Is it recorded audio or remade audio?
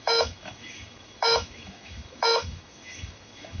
remade